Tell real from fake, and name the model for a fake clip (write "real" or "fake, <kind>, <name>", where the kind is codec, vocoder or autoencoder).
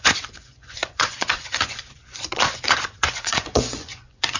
fake, vocoder, Vocos